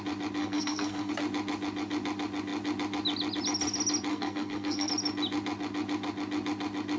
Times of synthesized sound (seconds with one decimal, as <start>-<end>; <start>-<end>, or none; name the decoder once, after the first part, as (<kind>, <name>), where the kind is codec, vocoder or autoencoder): 0.4-1.1 (codec, SNAC); 4.1-4.9